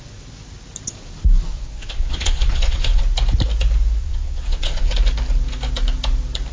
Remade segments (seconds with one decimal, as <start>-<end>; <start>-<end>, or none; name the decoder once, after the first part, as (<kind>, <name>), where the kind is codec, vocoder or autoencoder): 1.5-3.0 (vocoder, Vocos); 4.0-4.9